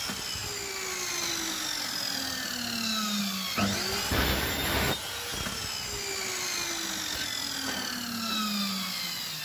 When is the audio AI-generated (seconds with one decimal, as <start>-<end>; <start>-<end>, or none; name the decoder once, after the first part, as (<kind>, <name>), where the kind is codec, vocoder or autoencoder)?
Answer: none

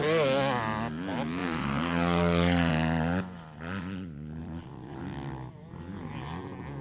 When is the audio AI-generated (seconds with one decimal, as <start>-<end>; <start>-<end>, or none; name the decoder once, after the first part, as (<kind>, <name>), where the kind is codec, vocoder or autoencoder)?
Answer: 1.4-2.7 (vocoder, Vocos); 4.4-5.0

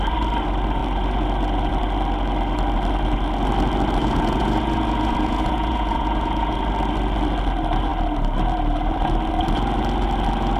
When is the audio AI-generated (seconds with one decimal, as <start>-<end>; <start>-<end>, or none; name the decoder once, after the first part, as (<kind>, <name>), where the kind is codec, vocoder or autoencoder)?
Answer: 4.0-6.6 (vocoder, Vocos)